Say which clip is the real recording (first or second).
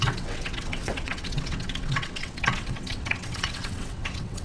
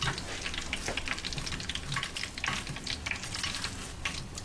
second